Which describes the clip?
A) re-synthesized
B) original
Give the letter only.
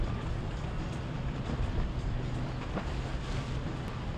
B